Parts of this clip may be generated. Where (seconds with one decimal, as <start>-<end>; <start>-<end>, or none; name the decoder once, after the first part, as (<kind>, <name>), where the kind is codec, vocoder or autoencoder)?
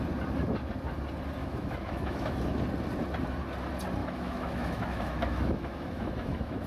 1.4-2.6 (autoencoder, DAC-VAE); 4.0-6.7